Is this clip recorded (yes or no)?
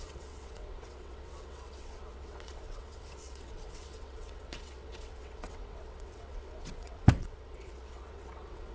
no